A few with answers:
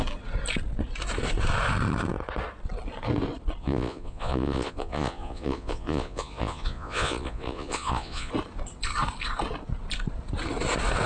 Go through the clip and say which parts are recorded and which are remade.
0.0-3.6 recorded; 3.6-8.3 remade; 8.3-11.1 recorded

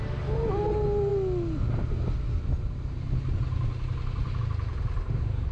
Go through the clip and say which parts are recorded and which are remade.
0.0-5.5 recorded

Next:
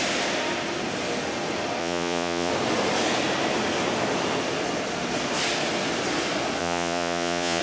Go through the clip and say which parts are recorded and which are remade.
0.0-1.8 recorded; 1.8-2.5 remade; 2.5-6.6 recorded; 6.6-7.6 remade

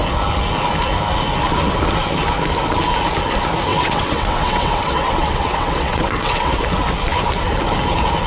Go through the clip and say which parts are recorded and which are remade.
0.0-3.7 recorded; 3.7-6.5 remade; 6.5-8.3 recorded